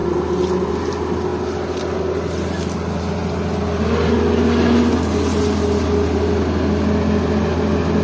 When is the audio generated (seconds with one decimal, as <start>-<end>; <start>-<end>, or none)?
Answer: none